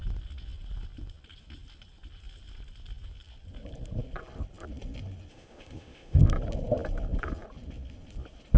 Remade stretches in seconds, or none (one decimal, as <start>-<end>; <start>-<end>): 5.3-6.2